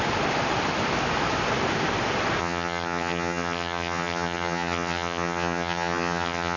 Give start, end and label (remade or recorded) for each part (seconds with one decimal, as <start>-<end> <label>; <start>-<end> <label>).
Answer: 0.0-2.4 recorded; 2.4-6.6 remade